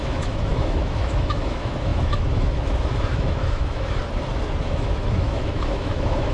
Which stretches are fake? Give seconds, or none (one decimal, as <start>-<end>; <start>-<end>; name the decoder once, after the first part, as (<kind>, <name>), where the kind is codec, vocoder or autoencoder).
0.0-4.0 (autoencoder, DAC-VAE); 4.6-6.3